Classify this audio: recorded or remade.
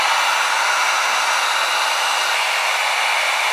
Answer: recorded